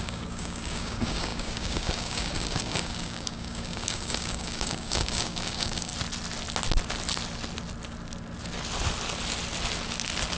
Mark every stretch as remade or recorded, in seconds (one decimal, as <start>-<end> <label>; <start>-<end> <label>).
0.0-5.9 remade; 5.9-10.4 recorded